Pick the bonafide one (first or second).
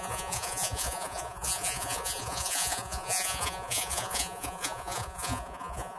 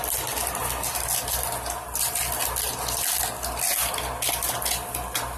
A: second